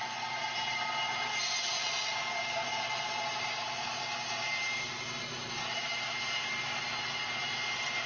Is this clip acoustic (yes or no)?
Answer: yes